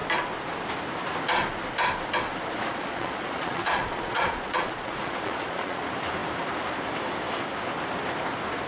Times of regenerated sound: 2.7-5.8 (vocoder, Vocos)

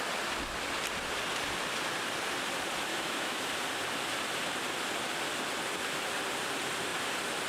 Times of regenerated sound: 2.9-3.5 (autoencoder, DAC-VAE)

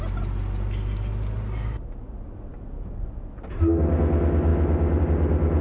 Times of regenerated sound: none

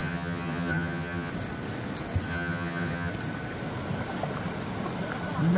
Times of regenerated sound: 0.0-1.3 (vocoder, HiFi-GAN); 2.3-3.1